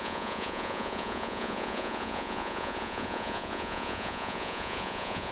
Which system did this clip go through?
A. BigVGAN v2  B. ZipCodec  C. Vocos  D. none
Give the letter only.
C